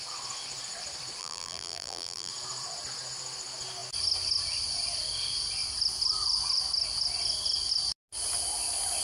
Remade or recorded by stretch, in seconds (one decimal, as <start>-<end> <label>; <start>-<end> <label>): 0.0-1.2 recorded; 1.2-2.3 remade; 2.3-9.0 recorded